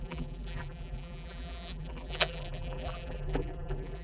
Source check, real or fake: fake